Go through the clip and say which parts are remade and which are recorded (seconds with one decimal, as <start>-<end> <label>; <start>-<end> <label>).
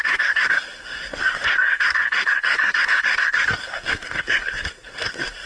0.0-5.5 remade